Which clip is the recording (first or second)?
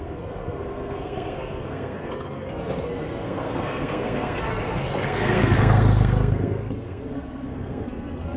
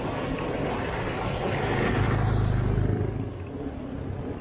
second